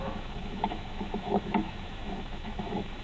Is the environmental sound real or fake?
fake